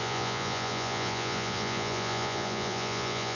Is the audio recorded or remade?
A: remade